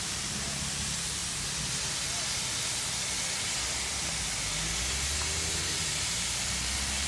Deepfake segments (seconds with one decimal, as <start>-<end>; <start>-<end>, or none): 0.0-1.2; 5.5-7.1